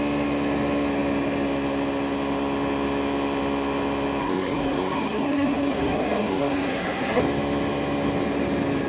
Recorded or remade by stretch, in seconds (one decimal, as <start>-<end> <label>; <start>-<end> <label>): 0.0-4.2 recorded; 4.2-7.2 remade; 7.2-8.9 recorded